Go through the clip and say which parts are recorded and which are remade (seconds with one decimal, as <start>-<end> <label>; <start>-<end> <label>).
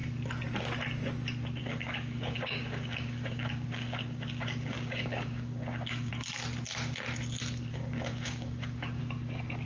0.0-1.6 recorded; 1.6-6.1 remade; 6.1-7.7 recorded; 7.7-9.0 remade; 9.0-9.7 recorded